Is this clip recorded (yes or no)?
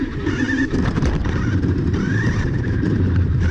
no